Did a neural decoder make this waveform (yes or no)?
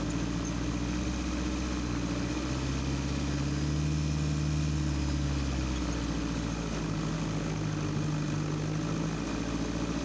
no